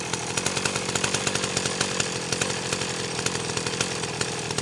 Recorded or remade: recorded